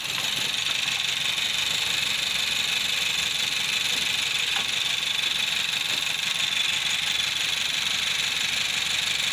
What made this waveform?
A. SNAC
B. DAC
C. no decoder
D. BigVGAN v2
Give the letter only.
C